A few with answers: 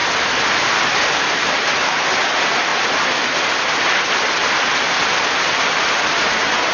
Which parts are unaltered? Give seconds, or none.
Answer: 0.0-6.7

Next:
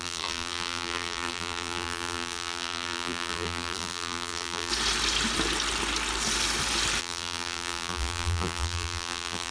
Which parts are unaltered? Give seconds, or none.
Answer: 4.7-7.0